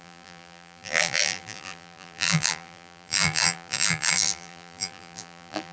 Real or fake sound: fake